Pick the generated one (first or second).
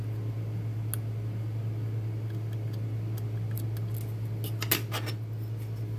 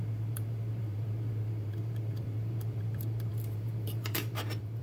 second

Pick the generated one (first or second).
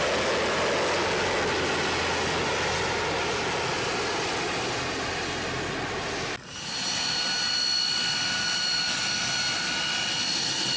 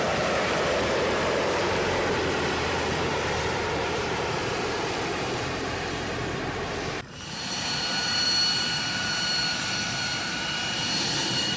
second